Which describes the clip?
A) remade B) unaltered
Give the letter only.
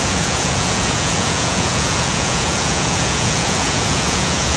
A